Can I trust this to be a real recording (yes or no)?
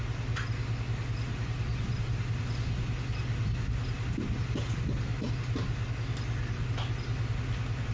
yes